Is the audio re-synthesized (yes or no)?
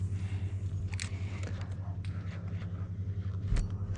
no